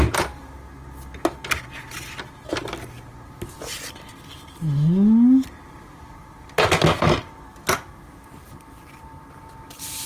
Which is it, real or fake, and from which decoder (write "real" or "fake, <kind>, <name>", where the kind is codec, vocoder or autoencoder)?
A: real